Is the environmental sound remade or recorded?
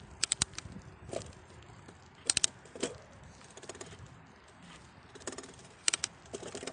recorded